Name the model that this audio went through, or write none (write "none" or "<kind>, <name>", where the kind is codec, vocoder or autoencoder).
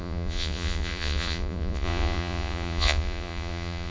vocoder, Vocos